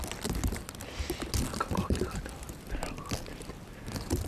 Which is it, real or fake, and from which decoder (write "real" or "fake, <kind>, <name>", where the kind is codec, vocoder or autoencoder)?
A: real